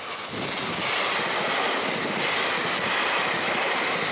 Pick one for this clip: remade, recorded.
remade